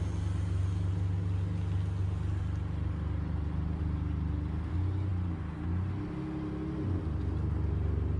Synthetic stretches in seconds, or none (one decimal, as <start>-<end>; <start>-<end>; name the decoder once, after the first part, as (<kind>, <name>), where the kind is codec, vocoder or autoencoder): none